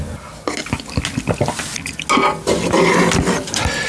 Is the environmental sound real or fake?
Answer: real